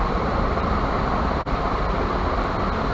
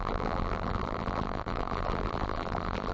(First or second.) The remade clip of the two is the second